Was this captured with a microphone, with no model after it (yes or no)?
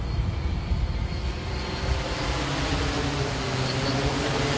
yes